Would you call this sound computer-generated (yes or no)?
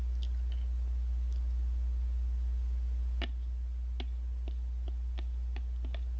no